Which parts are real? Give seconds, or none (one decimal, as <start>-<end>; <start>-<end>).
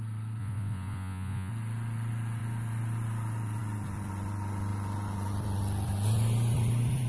0.0-0.4; 1.5-7.1